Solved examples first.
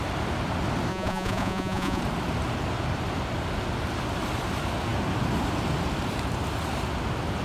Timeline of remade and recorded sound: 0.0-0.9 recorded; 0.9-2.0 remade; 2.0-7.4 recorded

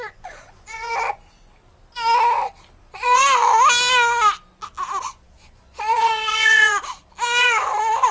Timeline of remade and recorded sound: 0.0-1.0 remade; 1.0-2.8 recorded; 2.8-3.2 remade; 3.2-5.0 recorded; 5.0-6.8 remade; 6.8-7.4 recorded; 7.4-8.1 remade

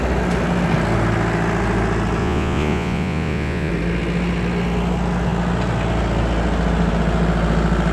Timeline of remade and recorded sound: 0.0-2.2 recorded; 2.2-3.7 remade; 3.7-7.9 recorded

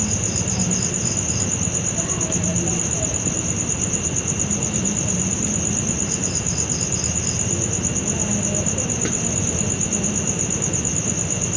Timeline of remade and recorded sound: 0.0-11.6 recorded

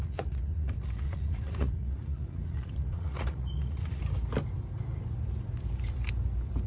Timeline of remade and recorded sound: 0.0-4.0 remade; 4.0-6.7 recorded